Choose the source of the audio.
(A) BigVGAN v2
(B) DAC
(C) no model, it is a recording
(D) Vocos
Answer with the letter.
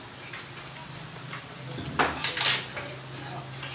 C